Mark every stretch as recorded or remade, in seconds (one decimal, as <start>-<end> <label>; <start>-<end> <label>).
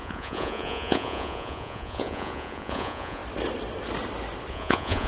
0.0-3.2 remade; 3.2-4.5 recorded; 4.5-5.1 remade